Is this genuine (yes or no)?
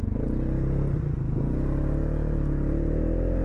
yes